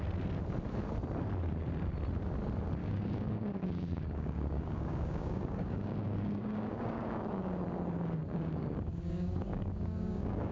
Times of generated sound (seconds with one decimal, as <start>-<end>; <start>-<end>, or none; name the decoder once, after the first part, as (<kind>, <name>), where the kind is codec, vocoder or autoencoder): 2.8-7.6 (codec, DAC); 8.2-10.5

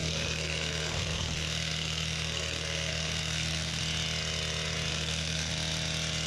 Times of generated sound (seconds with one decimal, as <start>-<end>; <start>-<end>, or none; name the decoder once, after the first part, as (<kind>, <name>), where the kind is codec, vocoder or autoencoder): 0.0-3.8 (codec, SNAC); 4.9-5.5

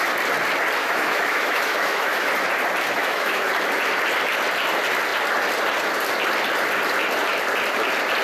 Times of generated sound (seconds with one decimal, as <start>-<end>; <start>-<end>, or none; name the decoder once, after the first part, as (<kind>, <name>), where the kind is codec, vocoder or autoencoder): 0.8-2.3 (autoencoder, DAC-VAE); 3.0-3.5

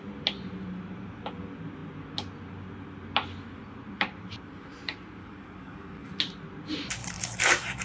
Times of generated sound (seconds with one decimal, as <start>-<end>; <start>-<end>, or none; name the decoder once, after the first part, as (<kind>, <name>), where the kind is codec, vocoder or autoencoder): 5.2-6.1 (codec, DAC); 7.0-7.8

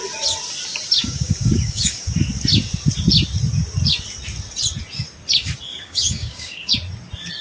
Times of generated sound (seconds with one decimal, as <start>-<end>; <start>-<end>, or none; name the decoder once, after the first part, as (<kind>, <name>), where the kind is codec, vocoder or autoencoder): 1.0-2.1 (codec, DAC); 5.7-6.7

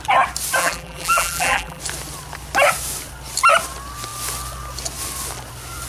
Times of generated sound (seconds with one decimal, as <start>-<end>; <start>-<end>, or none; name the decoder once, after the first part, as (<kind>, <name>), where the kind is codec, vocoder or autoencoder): 0.6-1.8 (vocoder, BigVGAN v2)